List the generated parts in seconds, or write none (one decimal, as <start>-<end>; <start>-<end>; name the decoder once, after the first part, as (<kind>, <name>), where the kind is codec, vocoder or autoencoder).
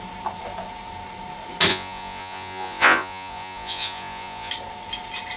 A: 1.7-4.5 (vocoder, Vocos)